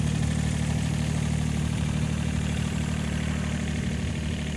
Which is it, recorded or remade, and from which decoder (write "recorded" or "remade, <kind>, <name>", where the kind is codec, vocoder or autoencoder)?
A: remade, vocoder, BigVGAN v2